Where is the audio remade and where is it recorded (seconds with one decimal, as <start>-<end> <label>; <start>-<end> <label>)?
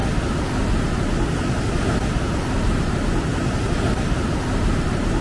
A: 0.0-2.3 recorded; 2.3-3.3 remade; 3.3-3.9 recorded; 3.9-5.2 remade